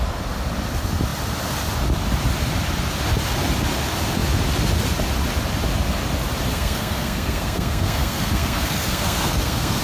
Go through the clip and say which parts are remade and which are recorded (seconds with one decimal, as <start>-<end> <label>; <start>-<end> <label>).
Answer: 0.0-6.5 recorded; 6.5-9.8 remade